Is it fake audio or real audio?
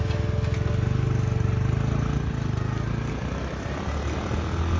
real